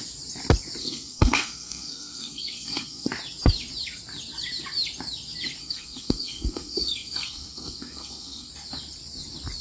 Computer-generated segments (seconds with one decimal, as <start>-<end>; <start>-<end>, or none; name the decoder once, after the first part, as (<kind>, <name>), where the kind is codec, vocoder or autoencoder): 0.8-3.1 (codec, SNAC); 5.6-8.5